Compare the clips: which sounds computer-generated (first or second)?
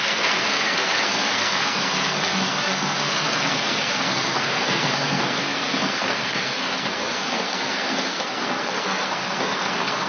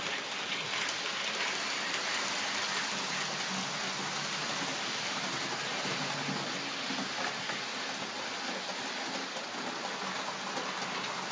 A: first